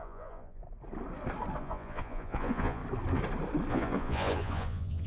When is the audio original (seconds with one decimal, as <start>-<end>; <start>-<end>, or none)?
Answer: 0.6-1.6; 2.8-3.7